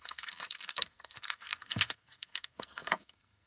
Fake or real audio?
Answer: fake